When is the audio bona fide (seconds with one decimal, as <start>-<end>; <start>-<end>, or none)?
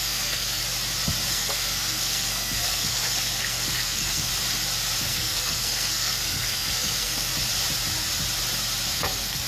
0.6-1.3; 4.3-5.0; 7.3-8.9